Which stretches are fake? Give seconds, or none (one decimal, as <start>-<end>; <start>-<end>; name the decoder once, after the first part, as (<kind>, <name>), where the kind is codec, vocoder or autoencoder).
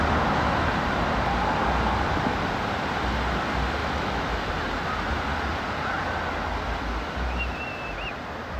3.8-4.5 (autoencoder, DAC-VAE)